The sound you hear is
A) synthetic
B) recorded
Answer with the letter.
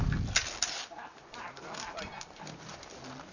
B